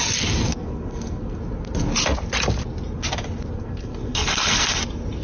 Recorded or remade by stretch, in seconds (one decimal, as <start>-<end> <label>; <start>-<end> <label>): 0.0-0.5 recorded; 0.5-1.4 remade; 1.4-3.6 recorded; 3.6-4.8 remade; 4.8-5.2 recorded